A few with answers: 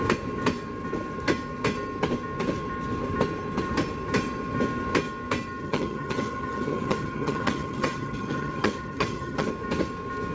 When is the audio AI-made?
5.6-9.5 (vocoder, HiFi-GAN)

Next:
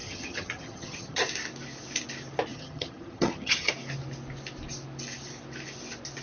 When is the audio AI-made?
0.0-1.2 (vocoder, HiFi-GAN); 2.5-3.7

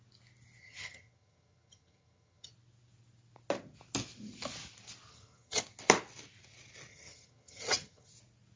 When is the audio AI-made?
0.6-2.5 (vocoder, HiFi-GAN); 5.1-5.6; 6.9-8.1

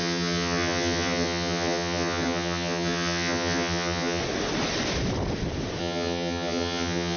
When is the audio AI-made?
0.0-4.2 (vocoder, HiFi-GAN); 5.8-7.2

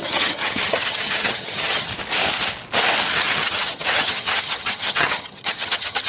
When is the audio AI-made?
0.0-1.9 (vocoder, HiFi-GAN); 3.1-6.1

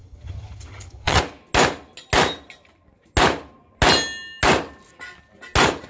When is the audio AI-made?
0.0-1.2 (vocoder, HiFi-GAN)

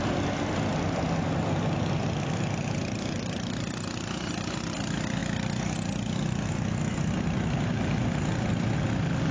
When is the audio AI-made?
none